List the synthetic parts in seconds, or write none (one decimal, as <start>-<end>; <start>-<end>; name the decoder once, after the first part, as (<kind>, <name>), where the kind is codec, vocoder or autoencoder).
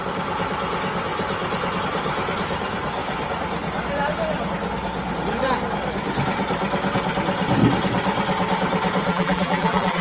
9.1-10.0 (vocoder, BigVGAN v2)